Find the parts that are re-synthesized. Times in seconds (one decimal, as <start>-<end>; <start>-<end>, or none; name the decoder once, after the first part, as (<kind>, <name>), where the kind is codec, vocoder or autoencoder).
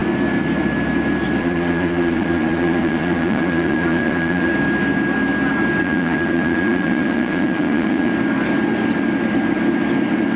1.4-4.5 (vocoder, Vocos); 5.8-8.1